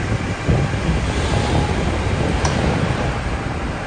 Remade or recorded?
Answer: recorded